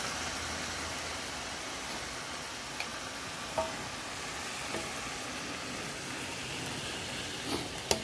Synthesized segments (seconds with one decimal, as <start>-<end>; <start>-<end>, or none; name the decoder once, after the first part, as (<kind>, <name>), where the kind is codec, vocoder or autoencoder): none